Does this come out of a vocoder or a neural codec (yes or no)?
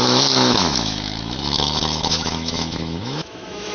yes